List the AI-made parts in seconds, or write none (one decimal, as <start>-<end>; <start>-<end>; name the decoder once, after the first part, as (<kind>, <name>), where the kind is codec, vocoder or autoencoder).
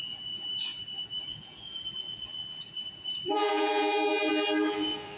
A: 0.0-4.3 (vocoder, Vocos)